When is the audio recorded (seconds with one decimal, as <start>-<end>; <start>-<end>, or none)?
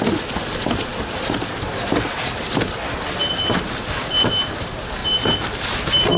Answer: 0.0-6.2